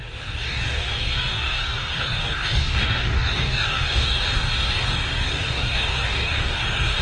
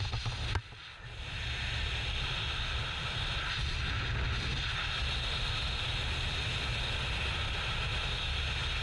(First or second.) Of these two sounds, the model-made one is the first